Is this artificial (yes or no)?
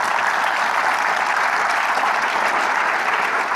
no